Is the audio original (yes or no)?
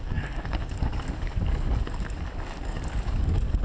no